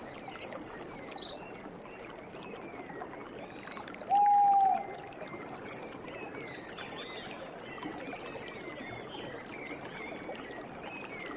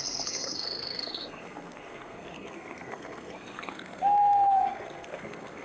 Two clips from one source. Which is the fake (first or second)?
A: second